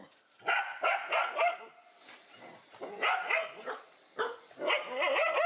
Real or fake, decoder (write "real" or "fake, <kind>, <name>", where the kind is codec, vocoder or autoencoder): real